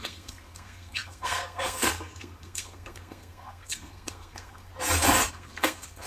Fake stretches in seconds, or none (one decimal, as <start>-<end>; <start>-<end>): 0.0-4.7; 5.3-6.1